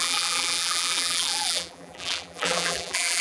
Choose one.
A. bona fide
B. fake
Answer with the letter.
B